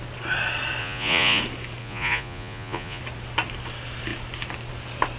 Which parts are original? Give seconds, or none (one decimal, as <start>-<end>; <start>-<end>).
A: 0.0-0.8; 1.4-1.8; 3.0-5.2

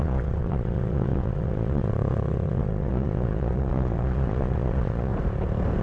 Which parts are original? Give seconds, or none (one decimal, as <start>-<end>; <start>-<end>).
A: 5.1-5.8

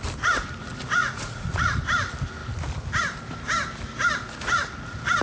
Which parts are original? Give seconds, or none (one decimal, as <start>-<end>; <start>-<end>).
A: 0.0-1.0; 1.8-5.2

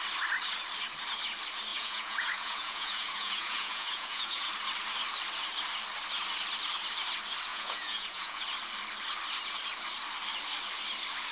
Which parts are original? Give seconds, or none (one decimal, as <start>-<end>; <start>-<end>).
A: 0.0-1.7; 4.5-7.5; 8.4-11.3

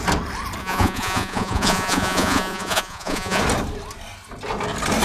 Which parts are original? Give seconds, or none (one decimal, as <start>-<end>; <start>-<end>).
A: 0.0-0.6; 3.4-5.0

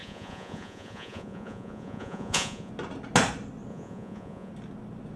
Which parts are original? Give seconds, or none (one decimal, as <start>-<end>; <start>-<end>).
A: 2.7-3.7; 4.5-5.2

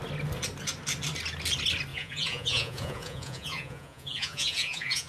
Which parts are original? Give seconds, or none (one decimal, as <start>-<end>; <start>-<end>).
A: 0.0-1.9